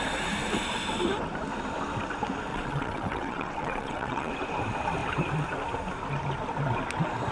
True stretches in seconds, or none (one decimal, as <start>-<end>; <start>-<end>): 0.0-2.5; 4.3-7.3